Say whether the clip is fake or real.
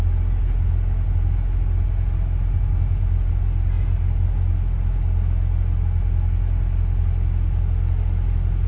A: real